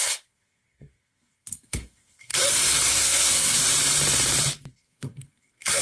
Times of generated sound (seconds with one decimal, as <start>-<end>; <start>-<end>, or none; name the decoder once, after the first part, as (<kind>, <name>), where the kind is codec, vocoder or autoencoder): 0.0-2.3 (codec, SNAC); 2.9-3.6; 4.7-5.8